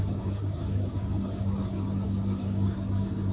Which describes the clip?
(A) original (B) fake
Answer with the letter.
B